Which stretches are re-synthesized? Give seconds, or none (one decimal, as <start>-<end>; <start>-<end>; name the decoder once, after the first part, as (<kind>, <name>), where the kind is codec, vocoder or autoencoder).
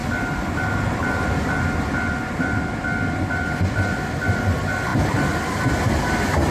none